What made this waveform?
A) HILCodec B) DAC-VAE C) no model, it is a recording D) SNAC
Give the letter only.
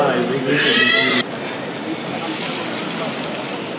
C